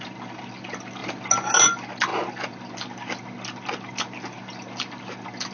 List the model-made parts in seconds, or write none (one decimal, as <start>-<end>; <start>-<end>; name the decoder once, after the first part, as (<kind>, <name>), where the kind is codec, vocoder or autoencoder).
none